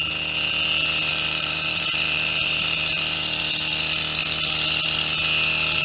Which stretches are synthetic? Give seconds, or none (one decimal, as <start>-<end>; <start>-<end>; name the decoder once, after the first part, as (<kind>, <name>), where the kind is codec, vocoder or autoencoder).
1.1-3.4 (vocoder, BigVGAN v2)